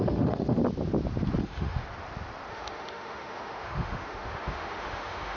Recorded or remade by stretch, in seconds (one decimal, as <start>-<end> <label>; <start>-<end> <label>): 0.0-0.6 remade; 0.6-1.4 recorded; 1.4-1.8 remade; 1.8-2.5 recorded; 2.5-5.4 remade